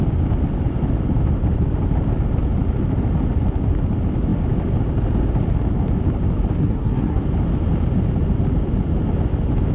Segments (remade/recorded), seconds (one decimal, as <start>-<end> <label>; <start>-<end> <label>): 0.0-6.6 recorded; 6.6-7.2 remade; 7.2-9.7 recorded